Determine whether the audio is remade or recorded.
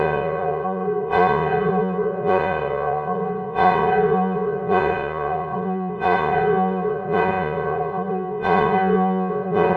remade